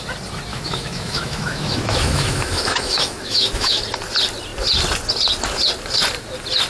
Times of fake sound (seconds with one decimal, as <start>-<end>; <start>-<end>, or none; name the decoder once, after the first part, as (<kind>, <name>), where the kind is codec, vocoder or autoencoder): 0.5-3.8 (autoencoder, DAC-VAE)